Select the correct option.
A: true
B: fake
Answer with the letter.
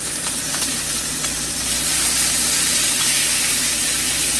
B